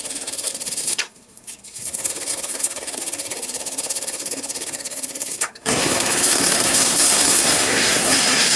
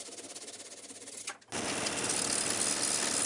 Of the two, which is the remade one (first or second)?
first